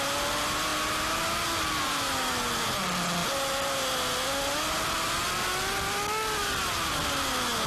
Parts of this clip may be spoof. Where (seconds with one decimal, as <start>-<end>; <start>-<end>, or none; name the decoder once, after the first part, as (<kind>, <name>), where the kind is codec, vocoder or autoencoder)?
none